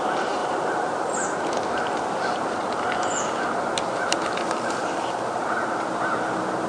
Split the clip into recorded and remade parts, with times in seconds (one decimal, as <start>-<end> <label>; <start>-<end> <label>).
0.0-0.4 recorded; 0.4-1.0 remade; 1.0-6.7 recorded